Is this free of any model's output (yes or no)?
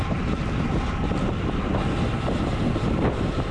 yes